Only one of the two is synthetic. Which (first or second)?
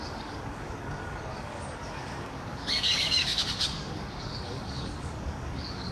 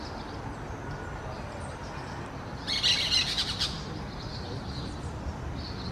first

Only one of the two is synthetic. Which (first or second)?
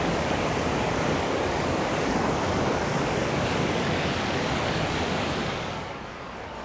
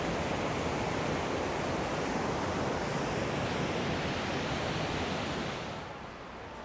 first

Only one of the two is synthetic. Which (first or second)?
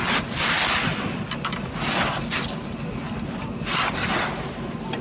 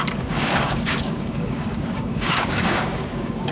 second